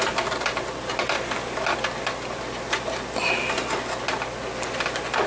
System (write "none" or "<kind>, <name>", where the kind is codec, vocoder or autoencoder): none